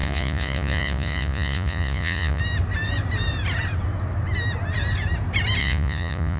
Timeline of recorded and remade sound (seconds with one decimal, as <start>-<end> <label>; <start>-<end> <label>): 0.0-2.4 remade; 2.4-5.6 recorded; 5.6-6.4 remade